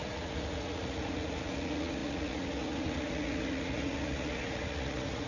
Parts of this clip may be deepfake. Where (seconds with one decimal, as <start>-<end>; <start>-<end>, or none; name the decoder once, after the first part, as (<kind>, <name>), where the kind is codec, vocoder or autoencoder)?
0.0-5.3 (vocoder, Vocos)